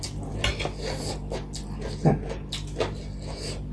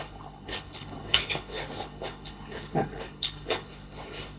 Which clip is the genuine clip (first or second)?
first